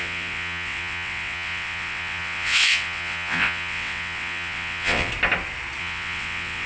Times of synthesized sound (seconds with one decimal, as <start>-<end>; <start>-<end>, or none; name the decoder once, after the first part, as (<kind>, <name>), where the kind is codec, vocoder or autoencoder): 0.0-5.1 (vocoder, WaveNeXt); 5.8-6.7